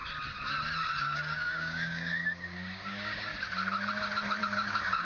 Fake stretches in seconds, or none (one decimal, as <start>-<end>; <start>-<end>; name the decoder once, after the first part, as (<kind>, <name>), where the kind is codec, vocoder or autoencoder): 1.0-3.3 (codec, DAC); 4.4-5.0